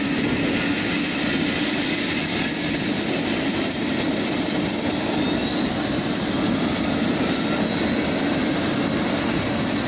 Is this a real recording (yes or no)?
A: yes